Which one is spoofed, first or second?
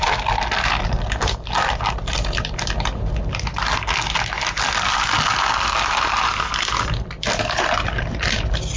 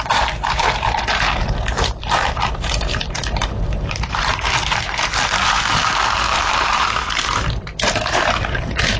second